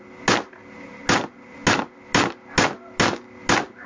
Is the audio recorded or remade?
recorded